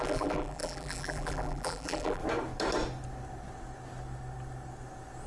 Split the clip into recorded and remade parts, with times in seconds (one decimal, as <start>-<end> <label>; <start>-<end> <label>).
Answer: 0.0-2.2 remade; 2.2-5.3 recorded